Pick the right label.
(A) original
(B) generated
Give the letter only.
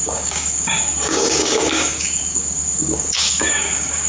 B